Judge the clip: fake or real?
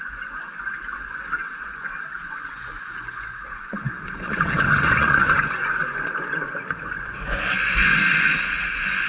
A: fake